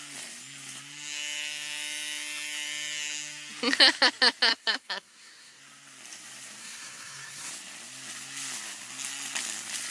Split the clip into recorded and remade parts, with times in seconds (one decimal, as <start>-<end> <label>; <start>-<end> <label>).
0.0-4.5 recorded; 4.5-5.6 remade; 5.6-6.6 recorded; 6.6-7.5 remade; 7.5-9.9 recorded